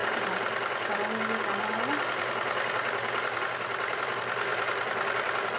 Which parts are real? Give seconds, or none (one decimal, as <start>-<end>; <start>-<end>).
0.0-5.6